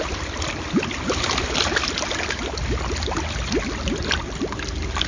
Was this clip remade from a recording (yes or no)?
no